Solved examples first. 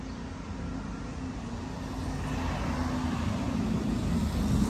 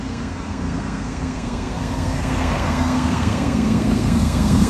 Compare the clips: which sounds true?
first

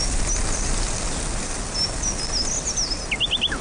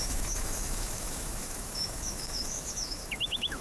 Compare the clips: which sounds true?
first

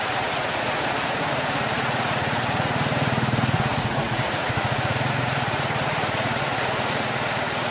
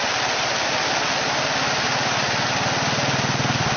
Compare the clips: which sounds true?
second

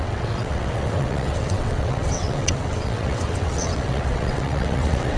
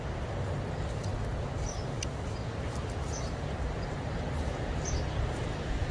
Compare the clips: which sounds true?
second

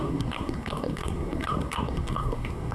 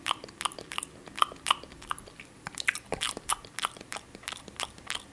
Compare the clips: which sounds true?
second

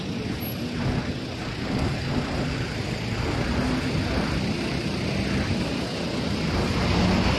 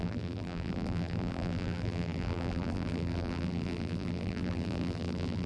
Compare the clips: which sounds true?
first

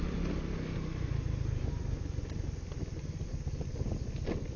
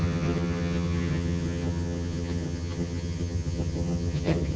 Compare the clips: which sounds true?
first